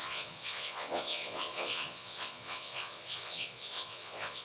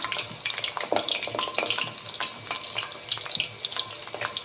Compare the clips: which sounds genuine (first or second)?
second